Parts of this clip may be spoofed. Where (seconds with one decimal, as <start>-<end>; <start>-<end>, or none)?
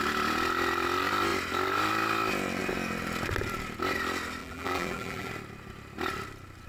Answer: 4.4-5.3